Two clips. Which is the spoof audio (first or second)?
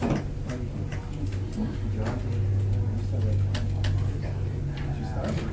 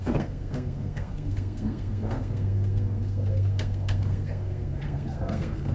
second